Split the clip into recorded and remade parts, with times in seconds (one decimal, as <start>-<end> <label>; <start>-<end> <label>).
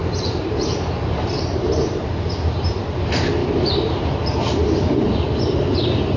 0.0-2.8 remade; 2.8-3.4 recorded; 3.4-4.3 remade; 4.3-6.2 recorded